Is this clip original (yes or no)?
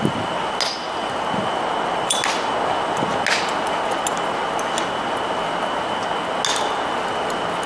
yes